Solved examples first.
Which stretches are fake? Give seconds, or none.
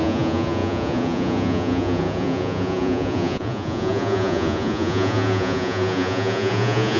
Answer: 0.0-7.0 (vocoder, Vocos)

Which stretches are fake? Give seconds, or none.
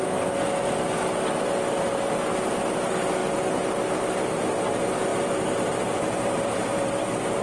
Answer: 5.1-6.9 (vocoder, BigVGAN v2)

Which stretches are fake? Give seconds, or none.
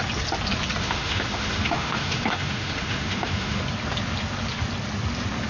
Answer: 0.8-3.6 (autoencoder, DAC-VAE)